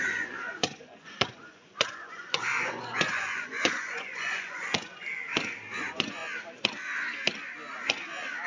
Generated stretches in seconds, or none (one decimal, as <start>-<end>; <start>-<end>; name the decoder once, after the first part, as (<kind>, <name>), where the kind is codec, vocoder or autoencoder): 0.0-5.3 (vocoder, Vocos); 5.8-6.2